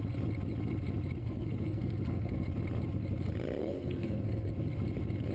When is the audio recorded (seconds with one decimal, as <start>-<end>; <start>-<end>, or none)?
0.0-1.2; 2.5-3.6; 4.5-5.3